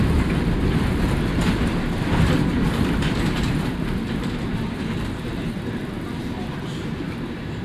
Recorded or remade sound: remade